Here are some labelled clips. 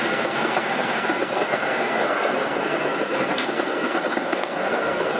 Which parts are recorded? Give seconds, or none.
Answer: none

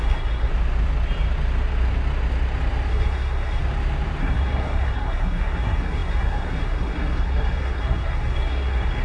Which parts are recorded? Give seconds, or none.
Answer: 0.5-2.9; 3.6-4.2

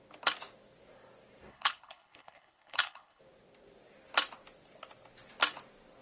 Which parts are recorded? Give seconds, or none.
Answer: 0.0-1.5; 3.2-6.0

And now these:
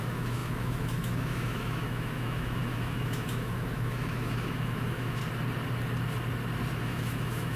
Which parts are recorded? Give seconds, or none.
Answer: 5.2-6.8

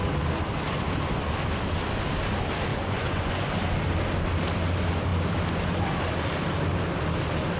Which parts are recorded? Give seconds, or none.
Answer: 0.0-2.7; 3.5-7.6

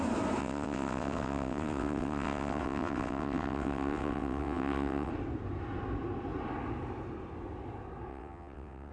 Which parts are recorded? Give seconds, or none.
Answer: 0.0-0.4; 5.1-8.1